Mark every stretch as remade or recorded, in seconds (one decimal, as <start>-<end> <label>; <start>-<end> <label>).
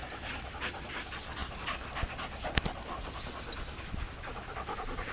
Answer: 0.0-5.1 recorded